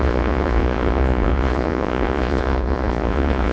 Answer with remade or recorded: remade